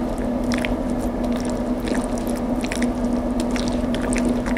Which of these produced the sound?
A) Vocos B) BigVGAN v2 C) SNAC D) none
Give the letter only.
D